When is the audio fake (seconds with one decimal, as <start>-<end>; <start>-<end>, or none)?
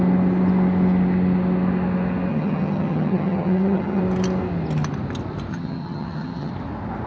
2.3-4.0; 5.5-6.5